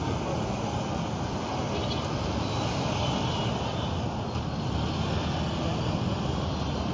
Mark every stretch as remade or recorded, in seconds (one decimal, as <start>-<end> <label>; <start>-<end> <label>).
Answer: 0.0-6.9 recorded